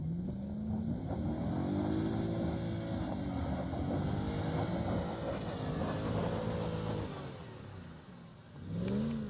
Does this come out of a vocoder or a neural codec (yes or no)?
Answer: no